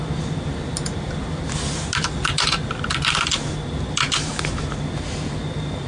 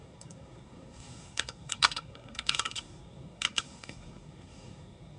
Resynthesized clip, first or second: second